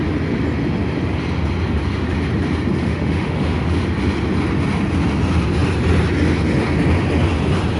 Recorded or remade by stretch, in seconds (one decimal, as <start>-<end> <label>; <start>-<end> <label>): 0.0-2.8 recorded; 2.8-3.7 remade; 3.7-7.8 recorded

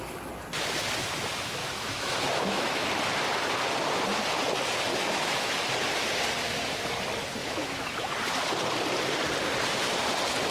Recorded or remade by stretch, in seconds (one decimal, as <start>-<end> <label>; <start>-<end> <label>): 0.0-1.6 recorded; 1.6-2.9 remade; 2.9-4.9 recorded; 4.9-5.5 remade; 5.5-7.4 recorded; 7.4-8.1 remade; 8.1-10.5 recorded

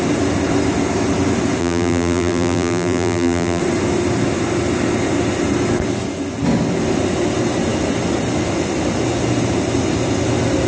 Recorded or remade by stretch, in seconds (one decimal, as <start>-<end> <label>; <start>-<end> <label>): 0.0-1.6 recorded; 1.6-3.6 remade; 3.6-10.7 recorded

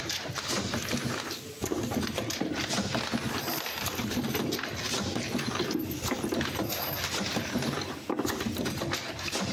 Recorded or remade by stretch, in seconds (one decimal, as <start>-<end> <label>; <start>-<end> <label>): 0.0-4.2 remade; 4.2-5.5 recorded; 5.5-9.5 remade

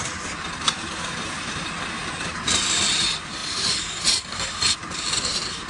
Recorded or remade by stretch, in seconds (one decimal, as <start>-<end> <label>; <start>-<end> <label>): 0.0-5.7 remade

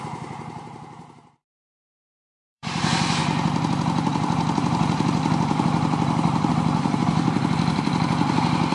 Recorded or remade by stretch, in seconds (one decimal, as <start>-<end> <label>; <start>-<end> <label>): 0.0-8.7 remade